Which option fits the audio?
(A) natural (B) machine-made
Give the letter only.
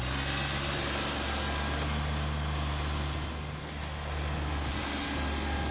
A